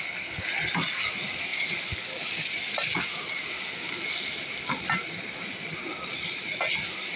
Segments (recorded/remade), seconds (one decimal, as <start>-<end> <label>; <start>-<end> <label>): 0.0-7.2 recorded